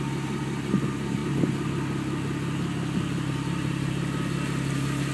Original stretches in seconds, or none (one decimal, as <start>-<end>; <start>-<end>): 0.0-5.1